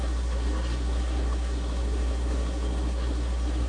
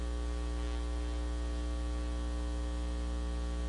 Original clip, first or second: second